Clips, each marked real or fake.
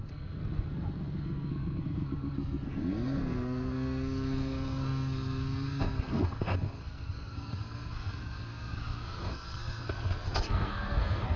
fake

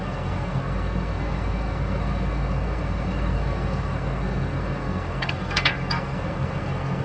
fake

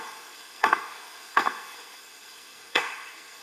fake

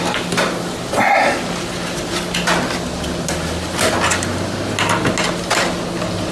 real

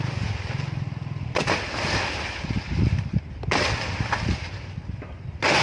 real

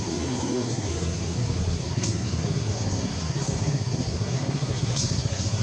fake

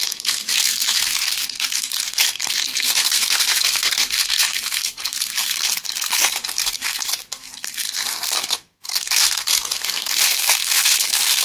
fake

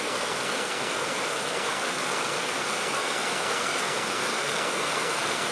fake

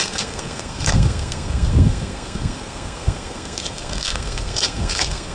fake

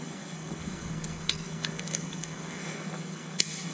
fake